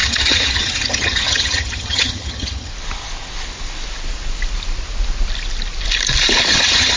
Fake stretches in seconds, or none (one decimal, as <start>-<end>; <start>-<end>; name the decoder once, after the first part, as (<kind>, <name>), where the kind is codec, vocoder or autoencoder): 0.0-2.7 (vocoder, HiFi-GAN); 6.5-7.0